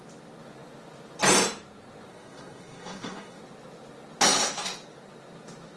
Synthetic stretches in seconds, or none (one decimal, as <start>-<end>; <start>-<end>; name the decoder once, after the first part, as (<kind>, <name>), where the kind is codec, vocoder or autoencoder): 2.1-3.4 (codec, SNAC)